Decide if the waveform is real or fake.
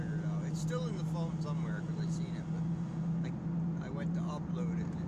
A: real